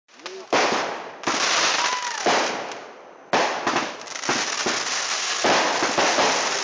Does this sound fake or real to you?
real